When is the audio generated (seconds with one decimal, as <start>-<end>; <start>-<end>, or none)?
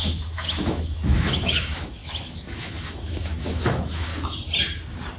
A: 0.0-4.1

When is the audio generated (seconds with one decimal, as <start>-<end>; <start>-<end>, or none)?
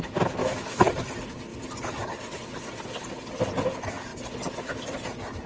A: 0.4-0.9